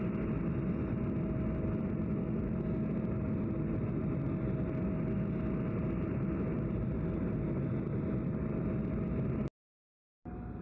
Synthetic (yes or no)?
no